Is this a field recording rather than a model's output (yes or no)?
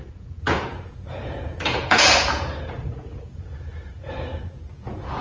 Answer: no